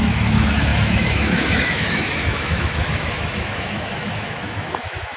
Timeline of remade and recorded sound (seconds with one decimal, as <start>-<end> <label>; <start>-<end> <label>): 0.0-5.2 remade